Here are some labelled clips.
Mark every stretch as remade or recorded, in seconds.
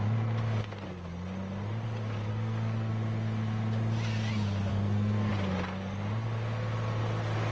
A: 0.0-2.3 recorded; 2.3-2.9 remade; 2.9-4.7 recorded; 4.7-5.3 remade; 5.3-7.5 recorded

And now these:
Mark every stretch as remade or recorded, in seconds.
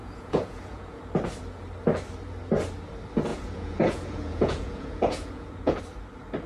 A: 0.0-1.0 remade; 1.0-3.3 recorded; 3.3-5.8 remade; 5.8-6.5 recorded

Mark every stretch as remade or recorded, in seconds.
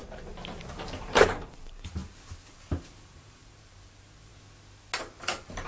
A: 0.0-2.0 remade; 2.0-3.1 recorded; 3.1-4.3 remade; 4.3-5.0 recorded; 5.0-5.7 remade